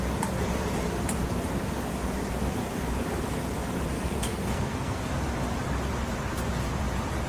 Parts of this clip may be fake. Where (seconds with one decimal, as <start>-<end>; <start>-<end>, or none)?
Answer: 3.9-5.0